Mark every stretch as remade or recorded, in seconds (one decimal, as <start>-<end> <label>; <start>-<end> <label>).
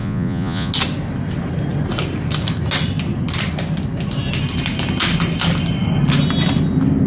0.0-0.7 remade; 0.7-7.1 recorded